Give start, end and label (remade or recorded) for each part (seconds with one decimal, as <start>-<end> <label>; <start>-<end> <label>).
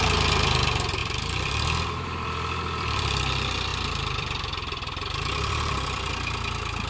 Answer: 0.0-1.0 recorded; 1.0-3.2 remade; 3.2-3.7 recorded; 3.7-6.1 remade; 6.1-6.9 recorded